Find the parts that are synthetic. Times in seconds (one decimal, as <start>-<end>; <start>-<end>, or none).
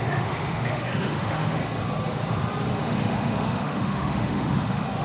0.0-1.6; 2.8-5.0